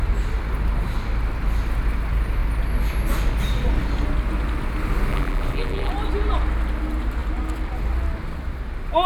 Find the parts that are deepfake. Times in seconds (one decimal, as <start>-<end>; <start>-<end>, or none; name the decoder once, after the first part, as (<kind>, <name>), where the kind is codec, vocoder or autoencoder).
5.1-5.9 (vocoder, BigVGAN v2)